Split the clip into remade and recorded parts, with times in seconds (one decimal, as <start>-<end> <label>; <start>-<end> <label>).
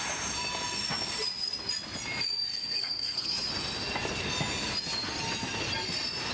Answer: 0.0-2.5 recorded; 2.5-3.5 remade; 3.5-6.3 recorded